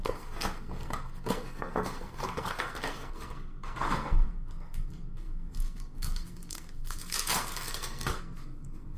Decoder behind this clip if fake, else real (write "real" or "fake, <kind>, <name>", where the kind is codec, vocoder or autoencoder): fake, codec, SNAC